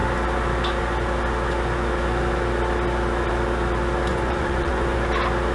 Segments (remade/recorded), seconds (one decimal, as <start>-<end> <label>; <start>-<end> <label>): 0.0-4.1 recorded; 4.1-5.0 remade; 5.0-5.5 recorded